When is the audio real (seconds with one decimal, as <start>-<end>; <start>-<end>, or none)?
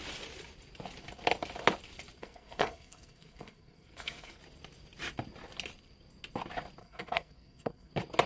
0.0-2.2; 4.4-6.8; 7.9-8.3